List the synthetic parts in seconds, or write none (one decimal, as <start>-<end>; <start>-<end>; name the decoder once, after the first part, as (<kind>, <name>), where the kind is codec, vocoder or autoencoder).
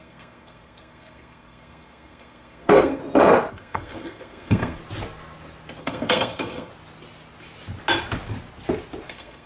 0.0-3.0 (codec, SNAC); 3.5-4.8; 5.8-6.7; 9.1-9.5